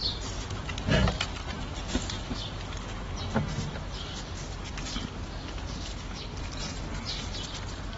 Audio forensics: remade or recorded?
recorded